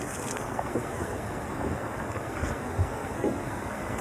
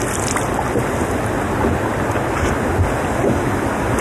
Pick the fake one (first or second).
first